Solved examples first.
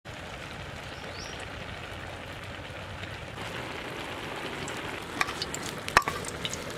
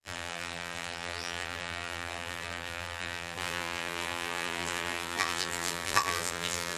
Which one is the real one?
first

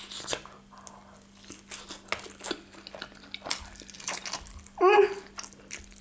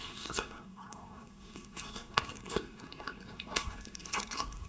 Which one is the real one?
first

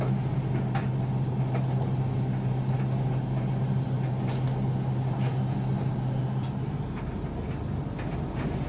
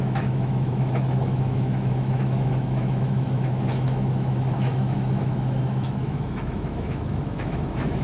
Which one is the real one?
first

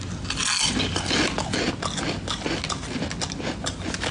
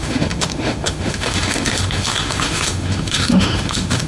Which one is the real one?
first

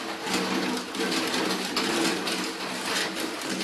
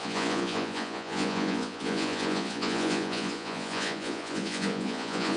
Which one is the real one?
first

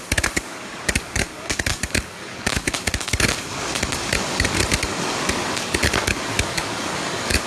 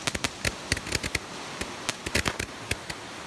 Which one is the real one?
second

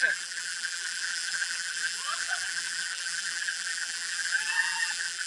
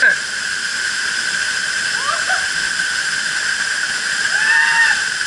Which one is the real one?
second